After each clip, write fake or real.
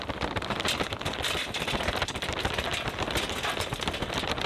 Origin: real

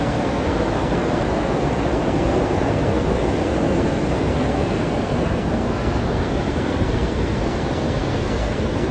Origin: fake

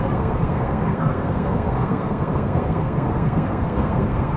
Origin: fake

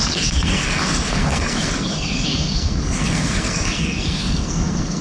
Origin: fake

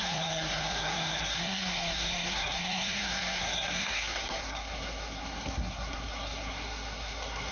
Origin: fake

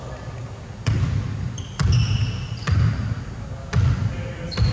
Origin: real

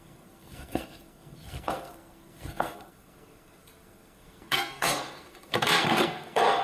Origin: fake